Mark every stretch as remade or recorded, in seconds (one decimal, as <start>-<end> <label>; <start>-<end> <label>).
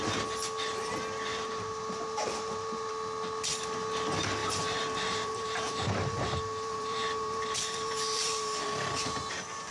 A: 0.0-1.3 recorded; 1.3-2.9 remade; 2.9-4.4 recorded; 4.4-9.7 remade